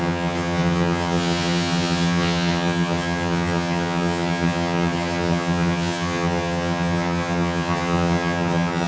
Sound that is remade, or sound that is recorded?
remade